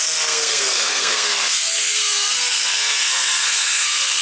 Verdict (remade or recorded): remade